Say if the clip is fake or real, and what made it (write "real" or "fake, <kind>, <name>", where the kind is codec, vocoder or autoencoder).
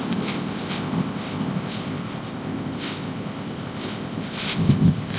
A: fake, codec, ZipCodec